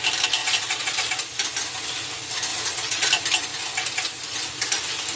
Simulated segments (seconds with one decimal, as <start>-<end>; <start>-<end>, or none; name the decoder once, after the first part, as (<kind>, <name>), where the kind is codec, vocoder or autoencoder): 0.4-1.1 (vocoder, Vocos); 2.5-3.1